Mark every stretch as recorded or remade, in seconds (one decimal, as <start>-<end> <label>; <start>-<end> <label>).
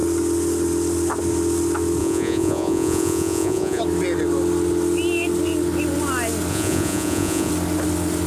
0.0-2.0 recorded; 2.0-3.8 remade; 3.8-6.5 recorded; 6.5-7.5 remade; 7.5-8.3 recorded